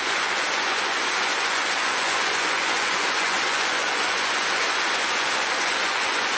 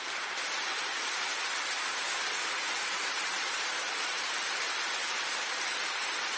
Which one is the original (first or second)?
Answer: second